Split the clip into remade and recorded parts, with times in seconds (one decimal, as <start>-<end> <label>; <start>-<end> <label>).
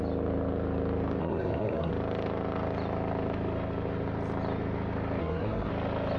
0.0-1.2 recorded; 1.2-1.9 remade; 1.9-5.2 recorded; 5.2-5.7 remade; 5.7-6.2 recorded